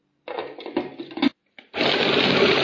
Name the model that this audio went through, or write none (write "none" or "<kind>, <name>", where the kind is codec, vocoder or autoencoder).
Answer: none